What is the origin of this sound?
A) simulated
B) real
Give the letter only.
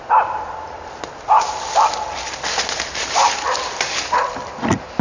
B